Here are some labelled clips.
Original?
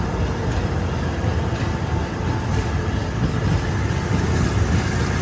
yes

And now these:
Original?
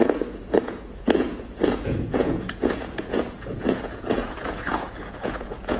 no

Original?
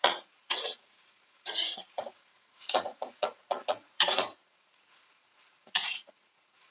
no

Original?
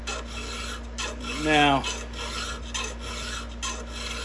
yes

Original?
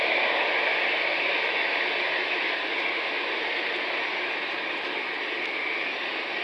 yes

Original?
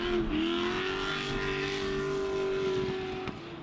yes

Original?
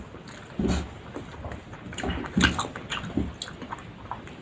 yes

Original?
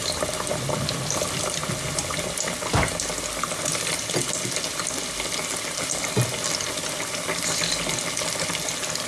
yes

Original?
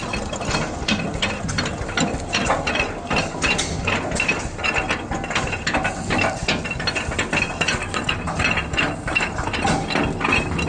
yes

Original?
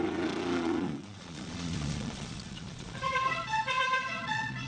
no